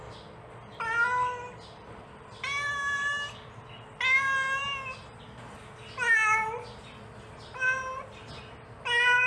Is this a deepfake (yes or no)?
no